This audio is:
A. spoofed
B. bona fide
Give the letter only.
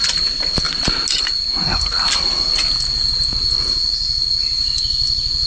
B